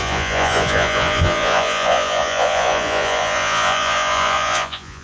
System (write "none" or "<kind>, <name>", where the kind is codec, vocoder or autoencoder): vocoder, Vocos